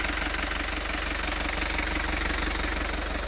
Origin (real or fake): real